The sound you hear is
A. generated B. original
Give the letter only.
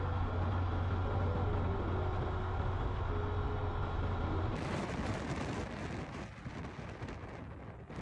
B